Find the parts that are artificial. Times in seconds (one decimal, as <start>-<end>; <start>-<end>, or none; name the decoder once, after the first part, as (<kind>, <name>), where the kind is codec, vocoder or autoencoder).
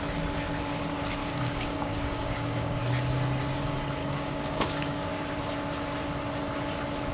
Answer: 1.2-2.8 (codec, DAC); 4.0-5.2